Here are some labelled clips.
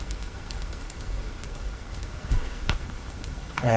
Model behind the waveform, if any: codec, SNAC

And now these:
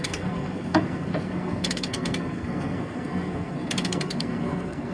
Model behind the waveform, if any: codec, SNAC